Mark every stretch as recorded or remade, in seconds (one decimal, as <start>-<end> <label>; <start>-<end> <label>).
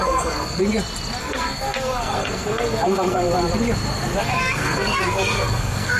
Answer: 0.0-0.6 remade; 0.6-1.2 recorded; 1.2-3.3 remade; 3.3-4.2 recorded; 4.2-6.0 remade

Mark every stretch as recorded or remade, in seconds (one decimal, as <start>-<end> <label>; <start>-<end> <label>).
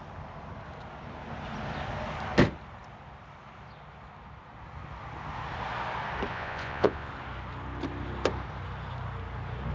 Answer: 0.0-6.3 recorded; 6.3-7.1 remade; 7.1-9.7 recorded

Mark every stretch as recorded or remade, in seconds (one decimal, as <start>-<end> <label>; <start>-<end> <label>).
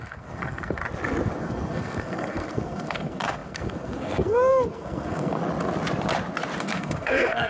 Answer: 0.0-0.8 remade; 0.8-1.4 recorded; 1.4-5.4 remade; 5.4-6.6 recorded; 6.6-7.5 remade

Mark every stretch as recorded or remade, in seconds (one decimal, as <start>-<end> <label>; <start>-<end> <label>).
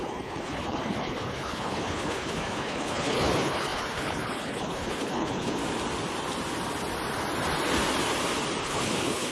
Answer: 0.0-5.6 remade; 5.6-8.6 recorded; 8.6-9.3 remade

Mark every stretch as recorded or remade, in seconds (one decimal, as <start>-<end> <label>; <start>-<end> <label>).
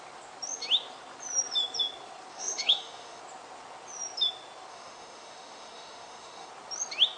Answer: 0.0-2.3 recorded; 2.3-3.2 remade; 3.2-4.7 recorded; 4.7-6.5 remade; 6.5-7.2 recorded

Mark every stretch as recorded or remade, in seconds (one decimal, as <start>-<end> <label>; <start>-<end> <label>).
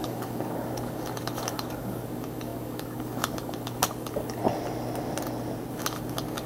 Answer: 0.0-4.4 remade; 4.4-5.7 recorded; 5.7-6.5 remade